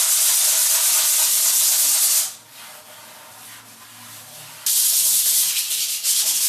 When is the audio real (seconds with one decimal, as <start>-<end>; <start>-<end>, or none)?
0.0-6.5